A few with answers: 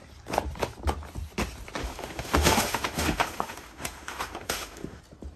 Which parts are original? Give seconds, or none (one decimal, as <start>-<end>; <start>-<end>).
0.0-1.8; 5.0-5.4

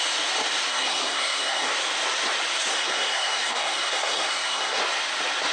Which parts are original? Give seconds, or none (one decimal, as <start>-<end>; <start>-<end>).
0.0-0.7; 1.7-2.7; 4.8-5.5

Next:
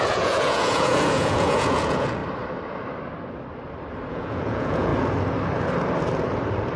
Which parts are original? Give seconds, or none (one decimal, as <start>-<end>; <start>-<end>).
2.2-4.1; 4.9-6.8